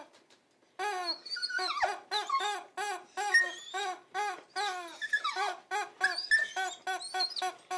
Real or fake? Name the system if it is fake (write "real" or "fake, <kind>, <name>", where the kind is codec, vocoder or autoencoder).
real